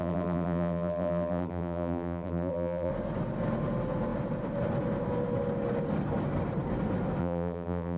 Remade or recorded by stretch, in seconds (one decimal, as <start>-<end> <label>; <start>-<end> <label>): 0.0-2.9 remade; 2.9-7.2 recorded; 7.2-8.0 remade